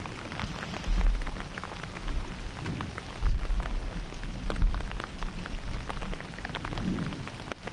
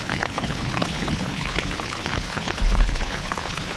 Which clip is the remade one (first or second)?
second